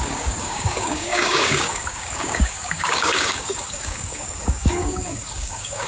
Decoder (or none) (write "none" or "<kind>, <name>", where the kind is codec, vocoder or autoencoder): codec, DAC